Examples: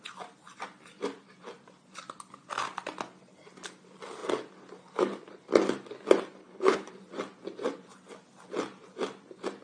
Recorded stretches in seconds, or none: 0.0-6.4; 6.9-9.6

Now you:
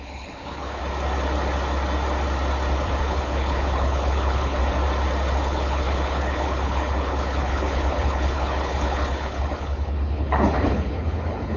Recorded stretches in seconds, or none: 0.8-3.0; 4.6-5.4

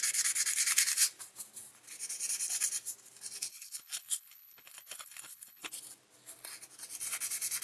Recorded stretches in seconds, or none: 0.0-3.5; 5.7-7.6

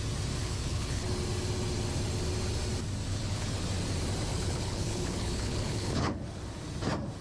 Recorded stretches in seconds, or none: 0.0-0.4; 1.0-3.1; 3.6-4.3; 6.3-7.2

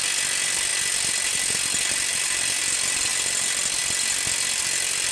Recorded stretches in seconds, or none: 0.0-5.1

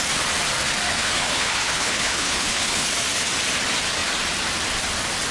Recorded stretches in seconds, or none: 0.0-0.9; 2.9-5.3